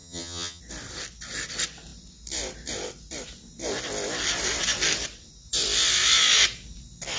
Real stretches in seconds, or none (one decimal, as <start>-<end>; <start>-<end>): 0.6-7.2